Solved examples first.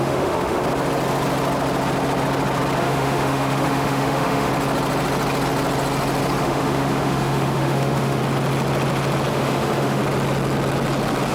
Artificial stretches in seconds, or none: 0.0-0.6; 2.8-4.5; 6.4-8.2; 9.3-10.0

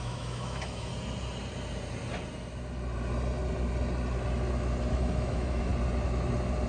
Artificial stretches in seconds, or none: 0.0-0.9; 4.9-5.7